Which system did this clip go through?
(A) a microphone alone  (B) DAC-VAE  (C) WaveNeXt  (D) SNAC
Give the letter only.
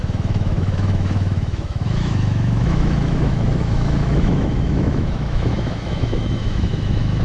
B